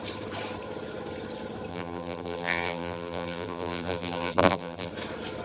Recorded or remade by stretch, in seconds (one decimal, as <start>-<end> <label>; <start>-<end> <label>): 0.0-1.7 recorded; 1.7-4.9 remade; 4.9-5.4 recorded